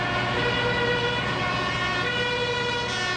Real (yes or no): yes